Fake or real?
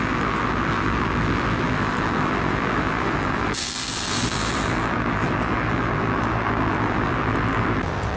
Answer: fake